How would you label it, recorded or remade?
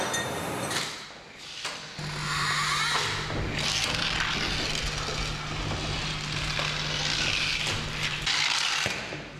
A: recorded